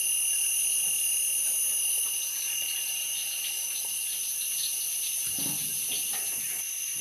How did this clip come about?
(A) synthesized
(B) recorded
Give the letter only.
B